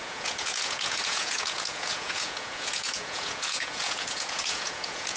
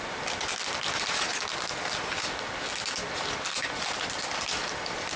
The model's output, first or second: first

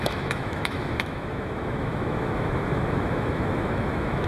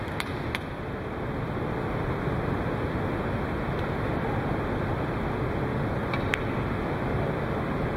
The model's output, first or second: first